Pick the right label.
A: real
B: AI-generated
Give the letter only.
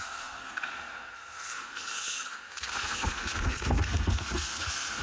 B